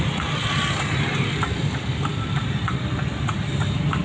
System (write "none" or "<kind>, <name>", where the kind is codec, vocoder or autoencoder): none